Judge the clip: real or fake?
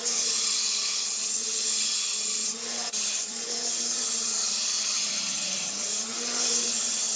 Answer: fake